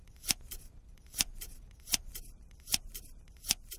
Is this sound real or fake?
fake